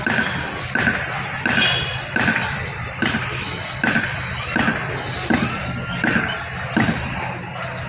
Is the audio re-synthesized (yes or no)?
no